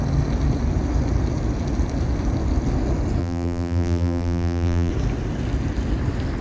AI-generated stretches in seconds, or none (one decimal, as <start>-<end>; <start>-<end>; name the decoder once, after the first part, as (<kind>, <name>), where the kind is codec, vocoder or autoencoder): 3.2-4.9 (vocoder, BigVGAN v2)